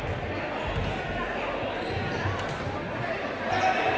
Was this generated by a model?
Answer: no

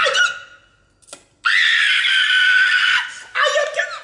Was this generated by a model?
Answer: no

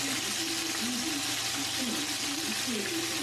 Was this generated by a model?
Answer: no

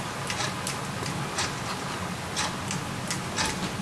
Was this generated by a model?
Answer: no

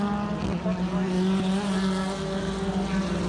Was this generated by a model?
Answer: no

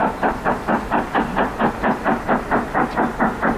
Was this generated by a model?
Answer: no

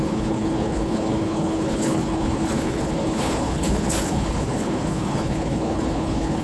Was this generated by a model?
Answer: yes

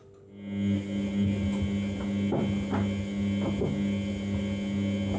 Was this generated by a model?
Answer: no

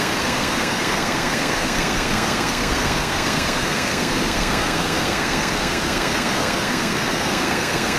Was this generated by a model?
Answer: yes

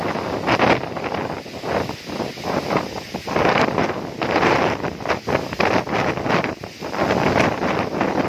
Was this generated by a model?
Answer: no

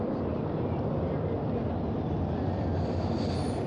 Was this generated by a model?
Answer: no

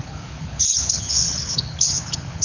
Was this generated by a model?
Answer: yes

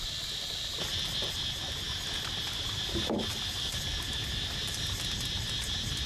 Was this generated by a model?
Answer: no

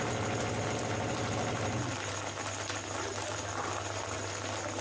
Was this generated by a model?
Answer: no